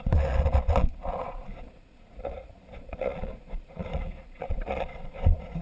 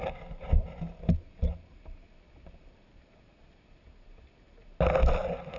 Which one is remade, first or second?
first